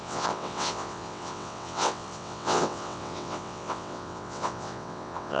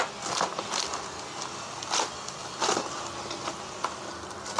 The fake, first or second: first